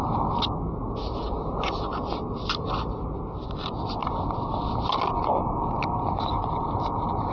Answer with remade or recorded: recorded